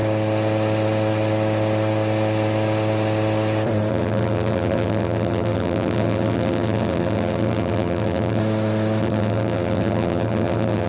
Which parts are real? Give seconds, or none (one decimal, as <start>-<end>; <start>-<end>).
0.0-3.9; 8.4-9.0